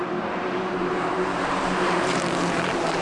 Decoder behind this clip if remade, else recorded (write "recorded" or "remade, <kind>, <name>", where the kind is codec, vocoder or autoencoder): remade, vocoder, BigVGAN v2